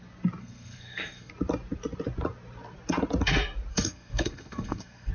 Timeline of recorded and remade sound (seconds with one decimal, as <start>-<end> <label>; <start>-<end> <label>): 0.0-0.4 recorded; 0.4-1.3 remade; 1.3-3.7 recorded; 3.7-5.1 remade